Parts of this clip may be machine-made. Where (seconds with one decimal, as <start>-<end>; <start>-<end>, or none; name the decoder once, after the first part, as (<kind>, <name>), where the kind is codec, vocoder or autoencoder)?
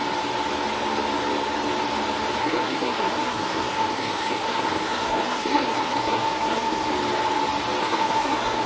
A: 2.4-6.9 (codec, SNAC); 7.8-8.7